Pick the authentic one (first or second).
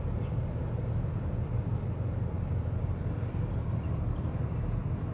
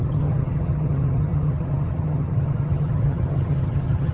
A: first